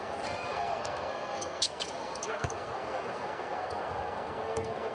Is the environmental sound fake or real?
fake